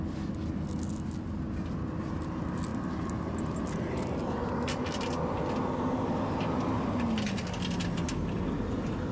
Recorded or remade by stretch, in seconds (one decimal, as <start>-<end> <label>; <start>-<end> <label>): 0.0-9.1 recorded